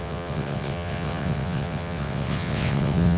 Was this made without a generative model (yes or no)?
no